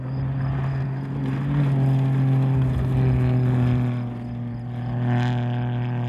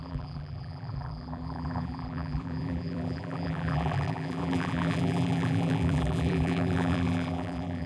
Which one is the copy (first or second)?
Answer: second